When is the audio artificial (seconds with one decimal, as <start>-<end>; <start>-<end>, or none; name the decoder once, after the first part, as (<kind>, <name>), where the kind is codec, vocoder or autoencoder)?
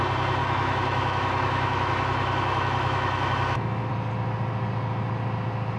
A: 0.4-3.9 (autoencoder, DAC-VAE)